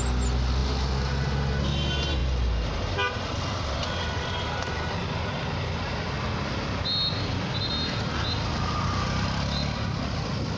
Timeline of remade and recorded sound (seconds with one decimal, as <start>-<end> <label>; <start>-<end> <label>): 0.0-10.6 recorded